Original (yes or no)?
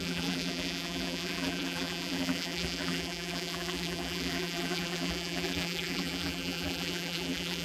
no